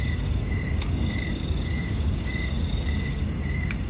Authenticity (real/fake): fake